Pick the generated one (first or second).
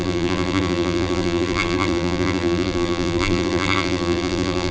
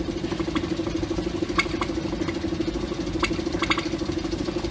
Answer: first